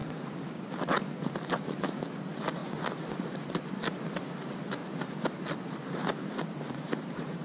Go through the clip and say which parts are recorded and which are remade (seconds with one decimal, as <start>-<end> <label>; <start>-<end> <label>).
0.0-1.6 recorded; 1.6-2.6 remade; 2.6-3.3 recorded; 3.3-4.8 remade; 4.8-6.7 recorded; 6.7-7.4 remade